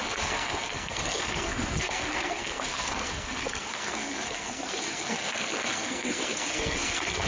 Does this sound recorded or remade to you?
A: remade